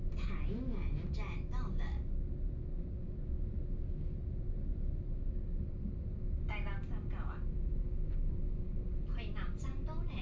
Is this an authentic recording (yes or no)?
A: yes